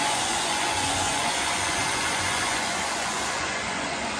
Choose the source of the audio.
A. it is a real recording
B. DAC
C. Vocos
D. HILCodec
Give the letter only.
C